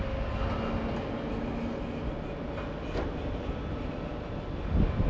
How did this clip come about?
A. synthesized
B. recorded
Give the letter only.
B